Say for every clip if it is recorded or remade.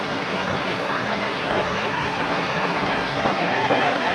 remade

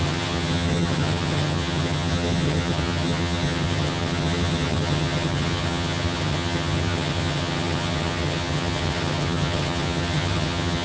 remade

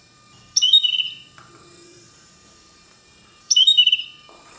remade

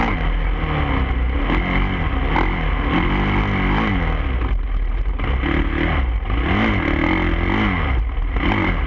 recorded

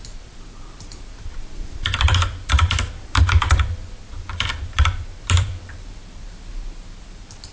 remade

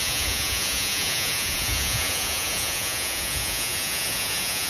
remade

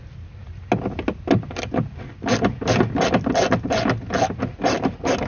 recorded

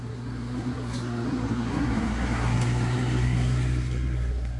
remade